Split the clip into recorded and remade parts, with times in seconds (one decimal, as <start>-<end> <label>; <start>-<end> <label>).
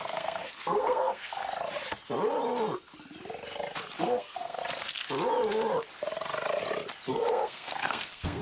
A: 0.0-1.4 remade; 1.4-4.0 recorded; 4.0-4.6 remade; 4.6-7.1 recorded; 7.1-8.4 remade